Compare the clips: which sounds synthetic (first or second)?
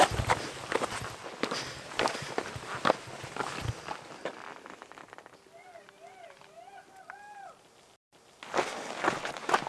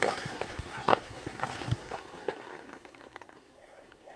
second